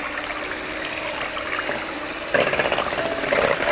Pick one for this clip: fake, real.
real